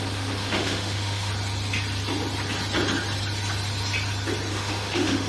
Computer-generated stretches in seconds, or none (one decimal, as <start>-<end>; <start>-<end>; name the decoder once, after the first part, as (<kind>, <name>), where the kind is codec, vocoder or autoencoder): 0.0-1.3 (autoencoder, DAC-VAE); 4.5-5.3